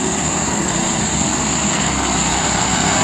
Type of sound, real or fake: fake